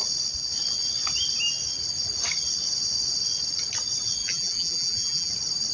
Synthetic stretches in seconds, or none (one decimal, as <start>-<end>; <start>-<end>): 4.2-5.3